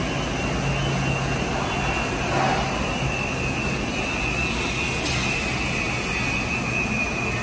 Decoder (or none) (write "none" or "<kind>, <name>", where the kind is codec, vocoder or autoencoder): none